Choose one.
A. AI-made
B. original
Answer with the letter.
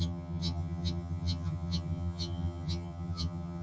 A